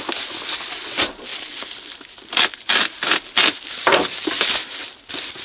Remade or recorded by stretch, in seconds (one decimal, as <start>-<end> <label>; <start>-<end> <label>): 0.0-5.4 recorded